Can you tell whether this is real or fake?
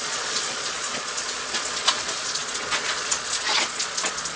fake